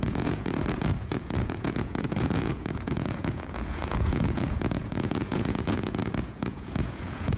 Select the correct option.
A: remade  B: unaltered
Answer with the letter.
A